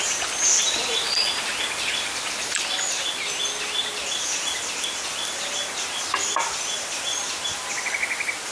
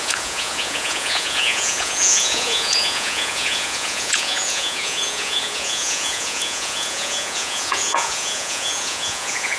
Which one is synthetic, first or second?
second